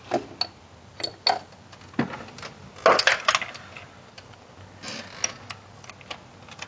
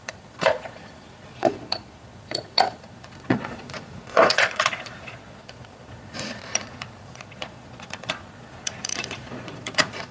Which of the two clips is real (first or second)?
first